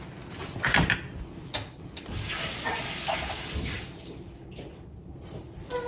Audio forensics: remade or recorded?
recorded